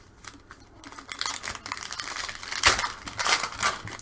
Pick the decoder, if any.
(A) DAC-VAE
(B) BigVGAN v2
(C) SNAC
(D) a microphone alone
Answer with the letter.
D